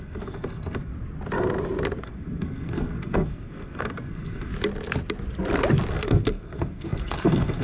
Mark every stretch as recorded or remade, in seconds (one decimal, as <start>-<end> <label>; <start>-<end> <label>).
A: 0.0-0.9 remade; 0.9-2.0 recorded; 2.0-4.5 remade; 4.5-5.9 recorded; 5.9-7.6 remade